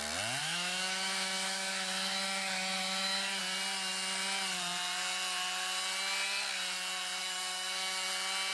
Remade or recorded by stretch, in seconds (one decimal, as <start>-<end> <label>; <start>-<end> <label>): 0.0-0.4 recorded; 0.4-3.4 remade; 3.4-7.2 recorded; 7.2-8.1 remade; 8.1-8.5 recorded